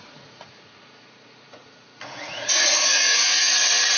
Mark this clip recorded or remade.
remade